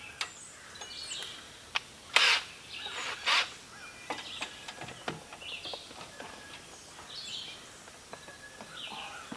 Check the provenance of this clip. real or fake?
real